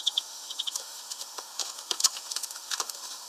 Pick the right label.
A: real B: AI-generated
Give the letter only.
B